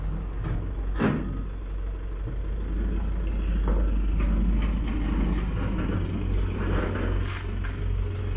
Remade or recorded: recorded